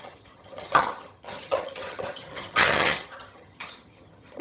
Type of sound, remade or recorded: remade